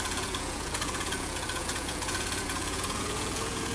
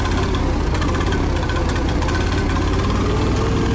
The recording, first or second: second